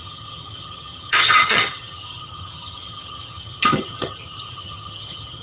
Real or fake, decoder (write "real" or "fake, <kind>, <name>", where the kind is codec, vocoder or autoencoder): fake, vocoder, HiFi-GAN